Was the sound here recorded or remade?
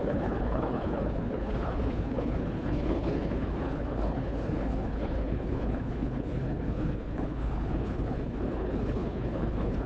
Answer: remade